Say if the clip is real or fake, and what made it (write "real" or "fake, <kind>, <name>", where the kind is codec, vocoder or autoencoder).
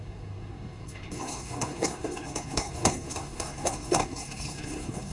fake, codec, SNAC